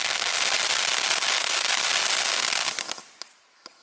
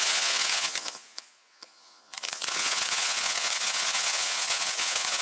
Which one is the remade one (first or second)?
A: second